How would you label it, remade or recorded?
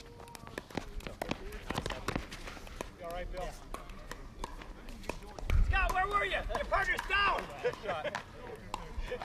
recorded